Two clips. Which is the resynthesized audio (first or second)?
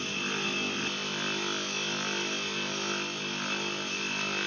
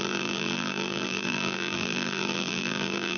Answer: second